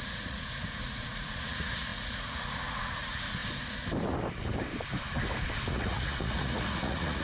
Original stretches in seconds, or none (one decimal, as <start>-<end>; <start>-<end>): 3.4-5.7